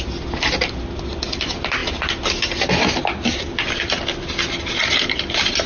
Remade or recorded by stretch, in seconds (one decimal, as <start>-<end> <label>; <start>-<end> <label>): 0.0-5.7 recorded